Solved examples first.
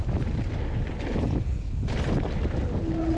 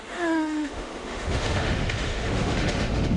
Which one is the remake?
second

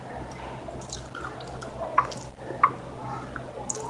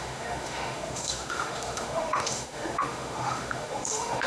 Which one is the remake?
second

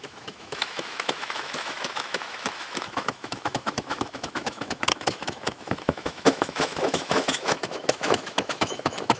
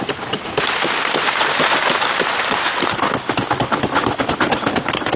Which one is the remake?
first